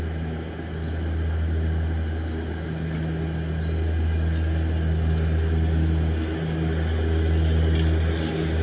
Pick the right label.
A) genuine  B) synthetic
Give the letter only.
A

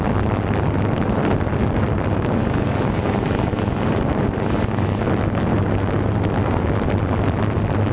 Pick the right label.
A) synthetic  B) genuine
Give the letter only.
B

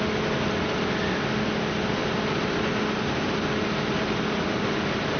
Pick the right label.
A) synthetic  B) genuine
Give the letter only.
B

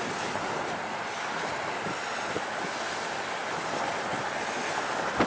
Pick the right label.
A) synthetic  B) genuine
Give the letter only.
B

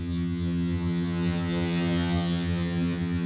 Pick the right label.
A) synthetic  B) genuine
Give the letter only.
A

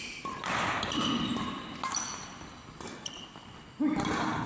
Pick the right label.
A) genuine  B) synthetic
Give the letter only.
A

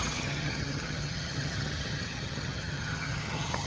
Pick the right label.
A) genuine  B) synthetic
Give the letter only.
B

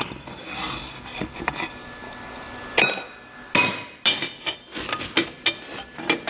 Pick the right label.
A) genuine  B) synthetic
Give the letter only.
A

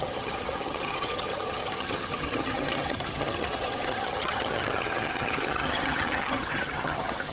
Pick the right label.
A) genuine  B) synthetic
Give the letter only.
B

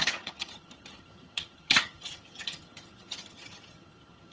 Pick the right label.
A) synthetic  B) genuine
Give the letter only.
A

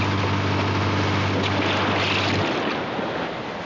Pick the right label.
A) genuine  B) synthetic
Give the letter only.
A